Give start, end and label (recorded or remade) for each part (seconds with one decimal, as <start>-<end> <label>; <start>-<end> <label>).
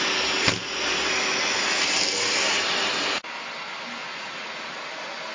0.0-4.0 recorded; 4.0-4.6 remade; 4.6-5.3 recorded